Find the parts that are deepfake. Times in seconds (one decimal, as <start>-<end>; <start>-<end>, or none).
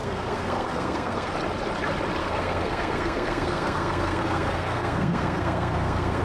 0.0-1.3; 2.2-6.2